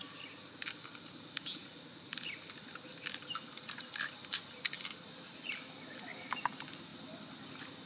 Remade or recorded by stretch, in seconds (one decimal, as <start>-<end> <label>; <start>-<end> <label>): 0.0-7.9 recorded